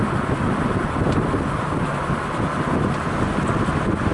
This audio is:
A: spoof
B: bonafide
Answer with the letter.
B